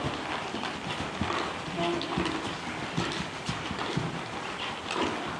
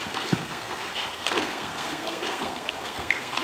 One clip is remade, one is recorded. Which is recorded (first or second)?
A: first